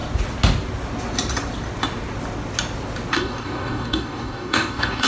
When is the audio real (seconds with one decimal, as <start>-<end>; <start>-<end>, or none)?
0.0-3.1